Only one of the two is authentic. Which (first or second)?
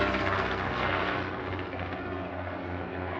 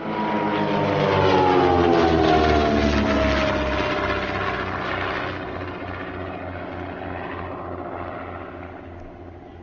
second